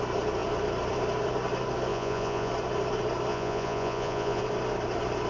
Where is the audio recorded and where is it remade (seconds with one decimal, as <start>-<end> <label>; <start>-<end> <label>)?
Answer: 0.0-1.9 recorded; 1.9-2.5 remade; 2.5-3.3 recorded; 3.3-4.4 remade; 4.4-5.3 recorded